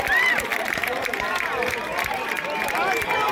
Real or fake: fake